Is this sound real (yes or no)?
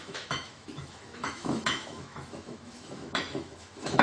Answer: no